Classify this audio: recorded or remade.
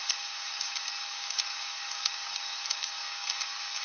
remade